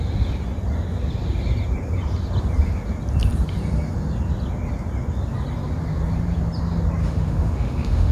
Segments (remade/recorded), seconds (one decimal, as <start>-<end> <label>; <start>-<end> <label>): 0.0-7.0 recorded; 7.0-8.1 remade